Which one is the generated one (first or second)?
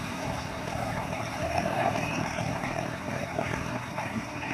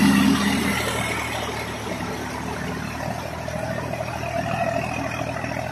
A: first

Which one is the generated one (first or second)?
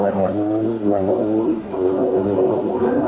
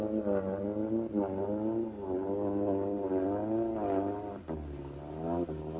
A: first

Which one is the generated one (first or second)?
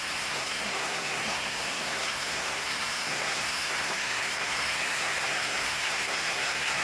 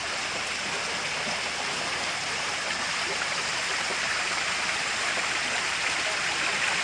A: first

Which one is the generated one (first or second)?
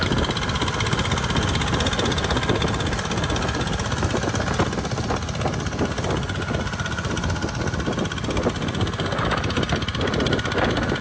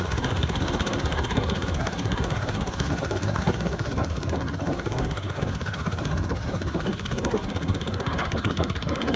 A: second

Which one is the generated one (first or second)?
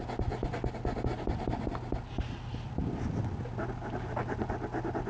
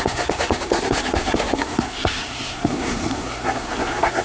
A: second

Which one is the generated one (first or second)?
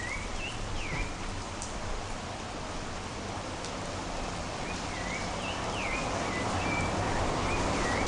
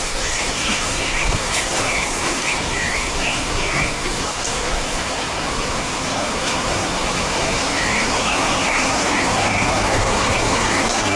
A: second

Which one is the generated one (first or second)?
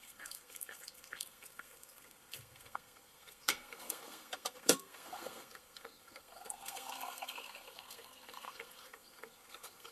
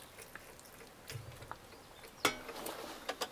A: first